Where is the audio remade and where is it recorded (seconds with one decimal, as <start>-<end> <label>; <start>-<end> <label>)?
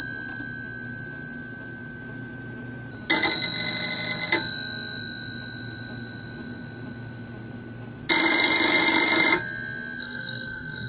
0.0-10.0 recorded; 10.0-10.9 remade